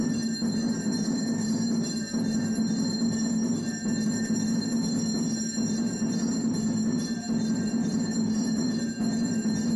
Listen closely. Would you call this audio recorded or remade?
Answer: remade